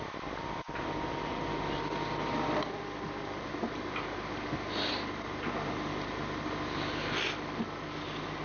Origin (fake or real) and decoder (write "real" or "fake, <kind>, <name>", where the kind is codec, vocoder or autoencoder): real